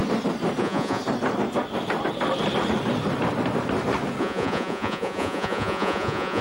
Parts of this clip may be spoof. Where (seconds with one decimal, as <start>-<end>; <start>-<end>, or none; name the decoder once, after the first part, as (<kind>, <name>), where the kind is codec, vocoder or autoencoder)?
0.6-1.0 (vocoder, Vocos); 4.2-6.4